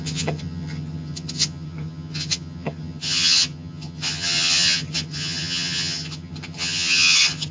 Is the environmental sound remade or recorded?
remade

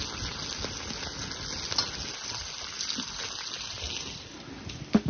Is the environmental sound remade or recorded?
recorded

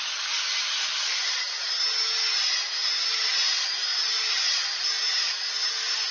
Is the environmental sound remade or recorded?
recorded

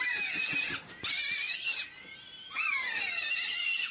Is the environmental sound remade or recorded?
recorded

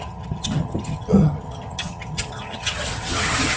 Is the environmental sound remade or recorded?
remade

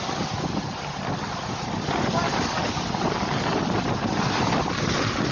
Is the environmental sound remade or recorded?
recorded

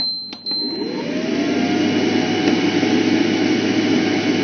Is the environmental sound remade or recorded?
recorded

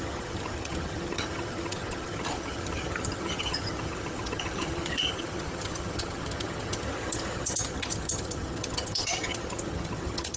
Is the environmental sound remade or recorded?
remade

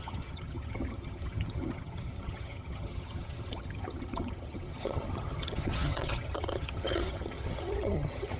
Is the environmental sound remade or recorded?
remade